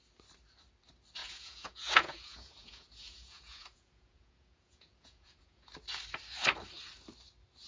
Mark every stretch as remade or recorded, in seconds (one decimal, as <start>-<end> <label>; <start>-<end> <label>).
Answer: 0.0-1.2 recorded; 1.2-5.7 remade; 5.7-7.7 recorded